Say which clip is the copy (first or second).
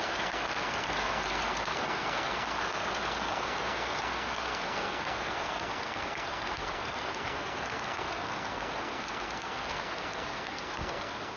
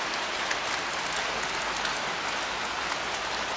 first